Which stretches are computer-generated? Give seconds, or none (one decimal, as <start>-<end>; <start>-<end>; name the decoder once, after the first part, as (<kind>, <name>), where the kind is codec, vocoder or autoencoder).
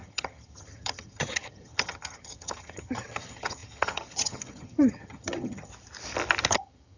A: 0.0-5.7 (vocoder, HiFi-GAN); 6.5-7.0